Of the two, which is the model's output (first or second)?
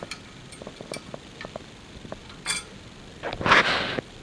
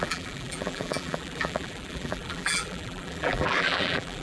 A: second